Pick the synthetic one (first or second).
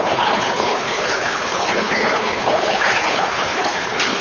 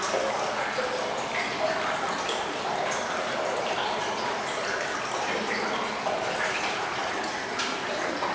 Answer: first